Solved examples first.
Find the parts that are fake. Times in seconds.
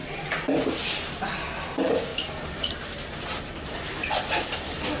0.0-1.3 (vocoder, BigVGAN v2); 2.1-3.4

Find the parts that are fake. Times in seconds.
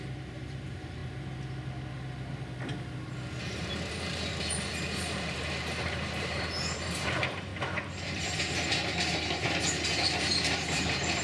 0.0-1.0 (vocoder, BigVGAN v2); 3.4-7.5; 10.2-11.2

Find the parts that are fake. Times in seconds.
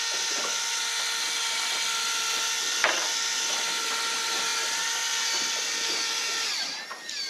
none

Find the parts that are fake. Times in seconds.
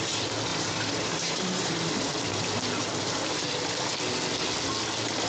0.5-2.0 (vocoder, BigVGAN v2)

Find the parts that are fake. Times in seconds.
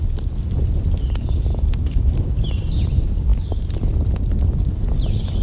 1.5-2.4 (vocoder, BigVGAN v2)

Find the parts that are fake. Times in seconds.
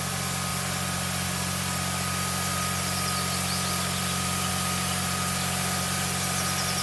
0.0-6.8 (vocoder, BigVGAN v2)